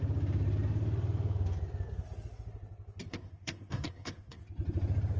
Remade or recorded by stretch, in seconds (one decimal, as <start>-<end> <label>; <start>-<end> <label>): 0.0-3.1 recorded; 3.1-4.4 remade; 4.4-5.2 recorded